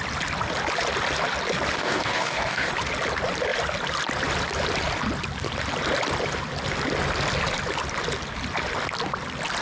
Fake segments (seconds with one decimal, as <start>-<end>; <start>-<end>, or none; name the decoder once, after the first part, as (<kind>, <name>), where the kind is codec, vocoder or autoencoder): 1.8-2.7 (codec, DAC)